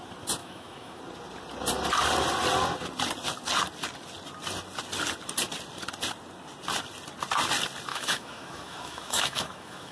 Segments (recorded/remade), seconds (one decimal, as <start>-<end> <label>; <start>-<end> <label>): 0.0-0.4 recorded; 0.4-1.0 remade; 1.0-7.9 recorded; 7.9-9.9 remade

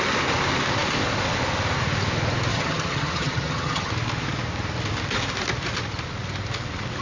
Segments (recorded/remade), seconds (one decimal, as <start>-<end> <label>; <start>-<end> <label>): 0.0-2.5 recorded; 2.5-3.9 remade; 3.9-7.0 recorded

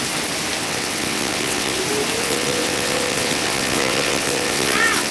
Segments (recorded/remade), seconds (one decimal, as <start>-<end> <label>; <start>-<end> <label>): 0.0-0.6 recorded; 0.6-1.8 remade; 1.8-2.2 recorded; 2.2-5.1 remade